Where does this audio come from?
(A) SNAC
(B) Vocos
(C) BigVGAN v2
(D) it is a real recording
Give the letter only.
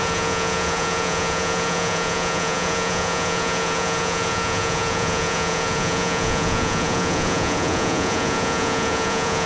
B